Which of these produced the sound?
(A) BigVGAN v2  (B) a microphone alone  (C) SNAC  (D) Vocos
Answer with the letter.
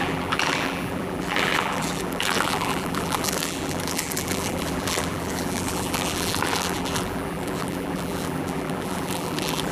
A